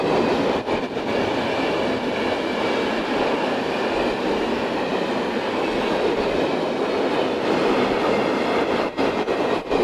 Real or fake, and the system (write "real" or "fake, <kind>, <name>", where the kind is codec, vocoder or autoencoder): real